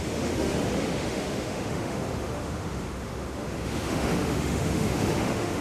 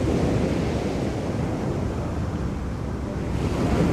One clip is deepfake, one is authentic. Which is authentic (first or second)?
second